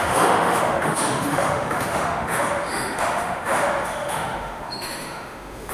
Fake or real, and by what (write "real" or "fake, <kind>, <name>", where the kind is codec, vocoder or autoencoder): fake, autoencoder, DAC-VAE